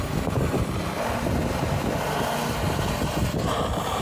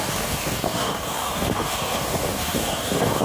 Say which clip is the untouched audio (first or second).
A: first